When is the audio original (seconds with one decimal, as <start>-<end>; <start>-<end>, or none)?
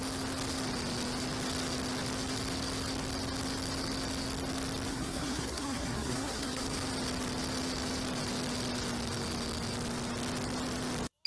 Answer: 0.0-4.9; 6.6-11.3